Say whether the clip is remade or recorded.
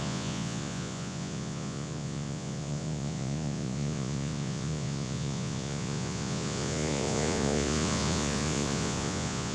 remade